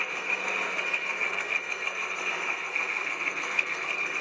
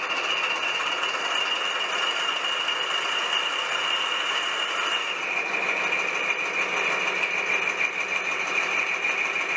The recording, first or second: second